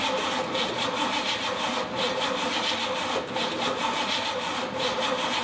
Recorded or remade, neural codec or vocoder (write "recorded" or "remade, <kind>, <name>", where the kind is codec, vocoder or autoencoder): recorded